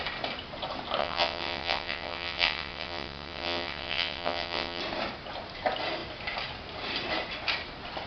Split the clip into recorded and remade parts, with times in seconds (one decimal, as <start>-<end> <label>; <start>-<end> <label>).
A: 0.0-1.0 recorded; 1.0-4.8 remade; 4.8-8.1 recorded